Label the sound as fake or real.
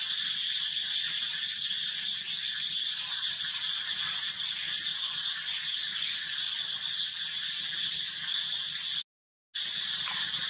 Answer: real